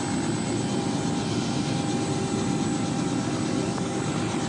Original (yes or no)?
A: yes